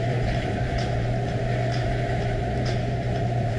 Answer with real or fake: fake